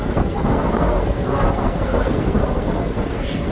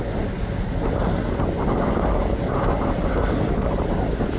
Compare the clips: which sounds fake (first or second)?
first